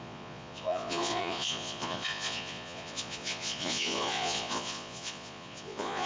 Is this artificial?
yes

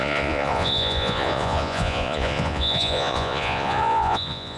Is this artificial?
yes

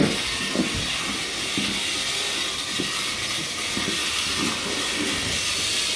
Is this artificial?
no